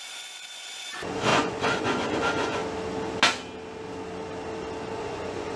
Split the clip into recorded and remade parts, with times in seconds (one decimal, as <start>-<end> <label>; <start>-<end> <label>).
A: 0.0-2.6 remade; 2.6-4.9 recorded; 4.9-5.6 remade